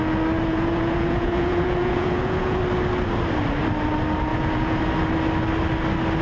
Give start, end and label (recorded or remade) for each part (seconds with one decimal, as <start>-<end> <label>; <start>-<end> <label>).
0.0-0.5 recorded; 0.5-2.6 remade; 2.6-4.3 recorded; 4.3-4.8 remade; 4.8-6.2 recorded